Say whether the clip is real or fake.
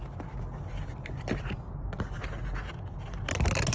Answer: real